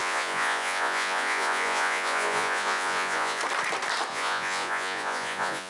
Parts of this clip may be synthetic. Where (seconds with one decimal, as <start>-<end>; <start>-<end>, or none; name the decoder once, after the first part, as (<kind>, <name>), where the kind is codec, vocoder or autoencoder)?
0.0-3.4 (vocoder, Vocos); 4.1-5.7